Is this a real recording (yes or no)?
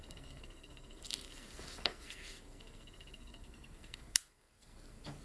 no